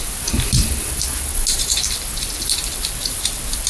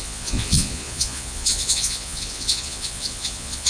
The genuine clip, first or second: first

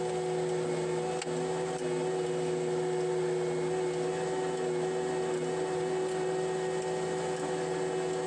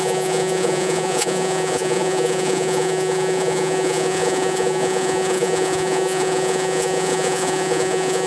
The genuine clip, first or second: first